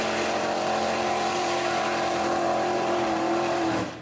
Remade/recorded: remade